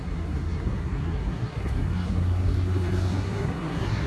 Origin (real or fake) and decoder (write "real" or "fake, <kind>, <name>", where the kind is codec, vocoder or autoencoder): fake, codec, SNAC